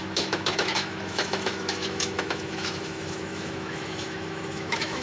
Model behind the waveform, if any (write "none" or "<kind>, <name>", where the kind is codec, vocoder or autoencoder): autoencoder, DAC-VAE